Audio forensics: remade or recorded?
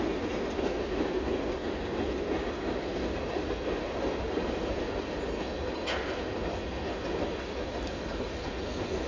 recorded